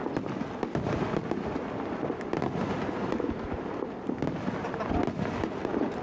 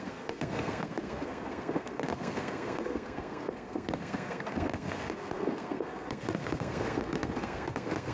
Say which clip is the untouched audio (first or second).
first